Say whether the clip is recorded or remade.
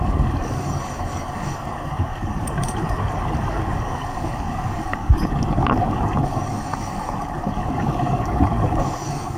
remade